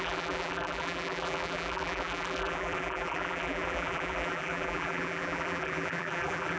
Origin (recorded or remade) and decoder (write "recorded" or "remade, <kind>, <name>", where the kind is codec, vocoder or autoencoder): remade, vocoder, BigVGAN v2